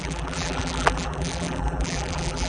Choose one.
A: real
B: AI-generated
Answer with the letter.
B